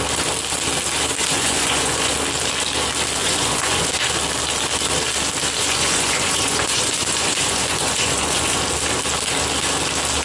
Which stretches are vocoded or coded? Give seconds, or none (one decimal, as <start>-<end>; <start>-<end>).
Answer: 1.2-2.1; 3.2-3.9; 5.6-8.6